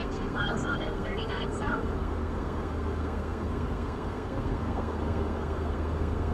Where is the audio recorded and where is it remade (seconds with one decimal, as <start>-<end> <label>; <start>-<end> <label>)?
0.0-6.3 remade